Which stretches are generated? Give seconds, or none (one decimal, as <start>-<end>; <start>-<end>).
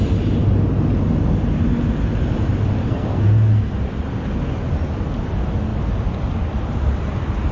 2.8-3.7